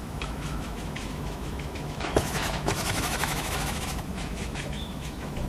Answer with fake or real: fake